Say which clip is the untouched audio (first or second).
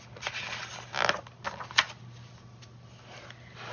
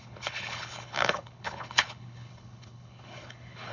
first